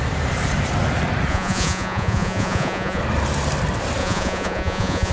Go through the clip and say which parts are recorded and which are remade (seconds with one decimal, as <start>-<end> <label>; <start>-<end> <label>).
0.0-1.3 recorded; 1.3-3.0 remade; 3.0-4.0 recorded; 4.0-5.1 remade